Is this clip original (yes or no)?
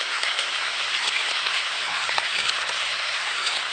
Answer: no